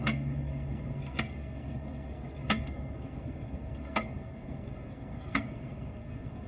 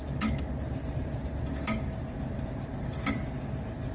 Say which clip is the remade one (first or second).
first